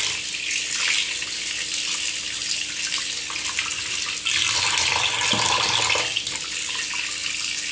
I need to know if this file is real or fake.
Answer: real